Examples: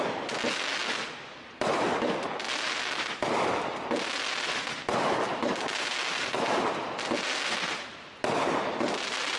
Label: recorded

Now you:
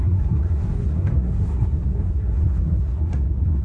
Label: remade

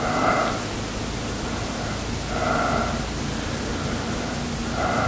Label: recorded